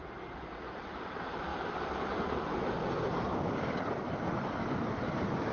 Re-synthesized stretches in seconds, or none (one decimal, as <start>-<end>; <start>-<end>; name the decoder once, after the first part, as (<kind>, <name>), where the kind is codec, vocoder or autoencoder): 3.3-3.8 (codec, DAC)